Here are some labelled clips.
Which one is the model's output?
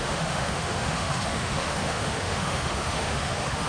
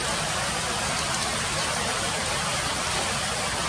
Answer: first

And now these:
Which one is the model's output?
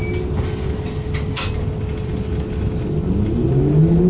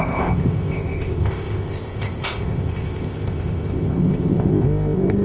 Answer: second